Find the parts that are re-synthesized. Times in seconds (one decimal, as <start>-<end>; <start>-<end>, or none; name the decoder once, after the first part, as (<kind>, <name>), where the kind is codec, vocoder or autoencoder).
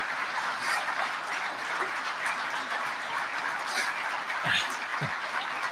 0.0-3.4 (vocoder, BigVGAN v2)